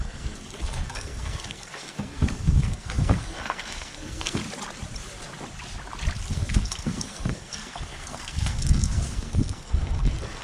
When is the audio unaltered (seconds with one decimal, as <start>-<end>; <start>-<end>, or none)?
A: 4.4-6.3